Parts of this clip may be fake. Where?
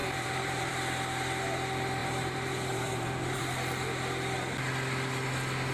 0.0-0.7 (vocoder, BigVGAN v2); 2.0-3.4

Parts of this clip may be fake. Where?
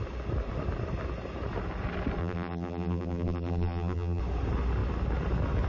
2.2-4.2 (vocoder, BigVGAN v2)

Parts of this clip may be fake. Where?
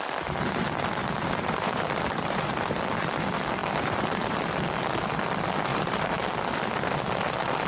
1.0-2.5 (vocoder, BigVGAN v2); 3.6-4.4; 5.7-6.2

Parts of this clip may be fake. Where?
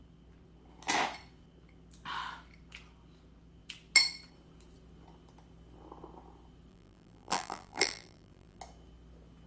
6.7-8.6 (vocoder, BigVGAN v2)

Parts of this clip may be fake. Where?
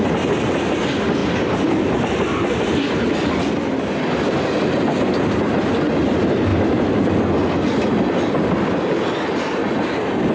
1.2-4.9 (vocoder, BigVGAN v2); 6.5-7.1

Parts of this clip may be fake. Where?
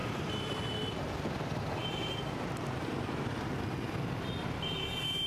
0.0-3.2 (vocoder, BigVGAN v2)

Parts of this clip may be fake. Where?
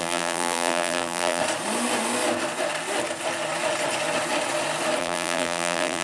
0.0-1.4 (vocoder, BigVGAN v2); 5.0-6.0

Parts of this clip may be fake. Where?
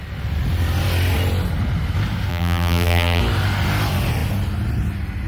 2.3-3.2 (vocoder, BigVGAN v2)